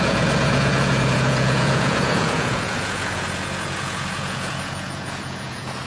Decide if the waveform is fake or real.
fake